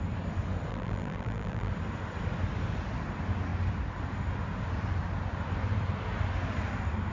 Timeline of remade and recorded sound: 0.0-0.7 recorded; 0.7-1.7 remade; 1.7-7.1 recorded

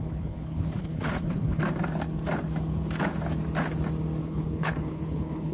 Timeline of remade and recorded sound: 0.0-1.6 remade; 1.6-4.2 recorded; 4.2-5.5 remade

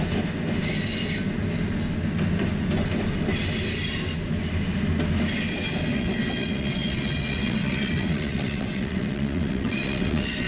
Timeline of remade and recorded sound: 0.0-5.9 recorded; 5.9-10.5 remade

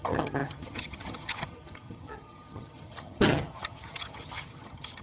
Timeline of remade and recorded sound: 0.0-5.0 remade

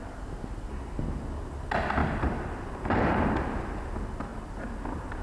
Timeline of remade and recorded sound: 0.0-2.0 recorded; 2.0-3.4 remade; 3.4-4.3 recorded; 4.3-5.2 remade

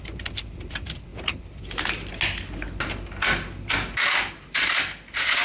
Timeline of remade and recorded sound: 0.0-5.4 recorded